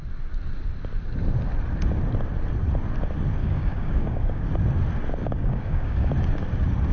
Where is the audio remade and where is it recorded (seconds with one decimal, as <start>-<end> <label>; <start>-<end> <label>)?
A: 0.0-3.4 recorded; 3.4-4.4 remade; 4.4-5.2 recorded; 5.2-6.1 remade; 6.1-6.9 recorded